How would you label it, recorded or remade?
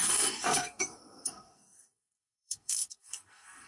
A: remade